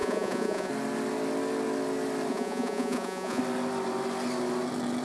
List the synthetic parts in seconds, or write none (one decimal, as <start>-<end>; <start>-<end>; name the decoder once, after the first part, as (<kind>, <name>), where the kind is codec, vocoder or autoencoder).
0.0-0.7 (vocoder, Vocos); 2.3-3.4